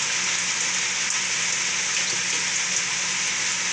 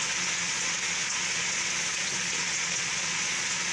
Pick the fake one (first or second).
second